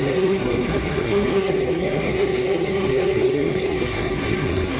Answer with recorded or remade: remade